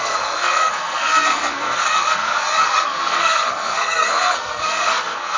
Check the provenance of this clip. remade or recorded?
remade